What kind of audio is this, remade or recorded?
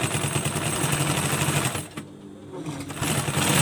recorded